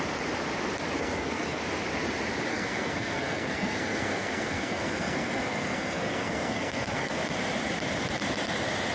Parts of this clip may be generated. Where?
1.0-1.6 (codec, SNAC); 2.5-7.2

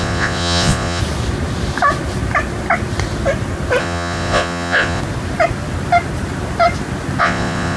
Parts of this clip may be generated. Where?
0.0-1.0 (vocoder, Vocos); 3.8-5.0; 7.2-7.8

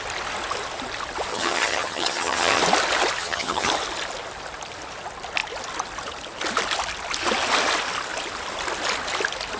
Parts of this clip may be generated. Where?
1.3-2.6 (vocoder, HiFi-GAN); 3.2-3.7

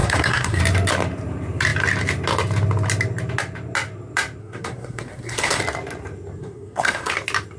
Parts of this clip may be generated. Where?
0.0-0.6 (codec, SNAC); 4.4-5.6; 6.4-7.1

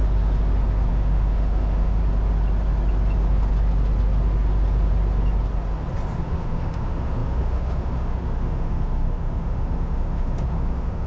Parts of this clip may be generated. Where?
0.9-2.0 (autoencoder, DAC-VAE); 6.2-11.1